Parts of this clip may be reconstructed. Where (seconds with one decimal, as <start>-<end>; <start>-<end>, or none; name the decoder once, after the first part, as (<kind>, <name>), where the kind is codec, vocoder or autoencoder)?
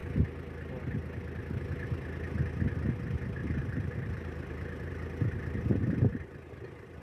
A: 3.4-4.9 (vocoder, BigVGAN v2)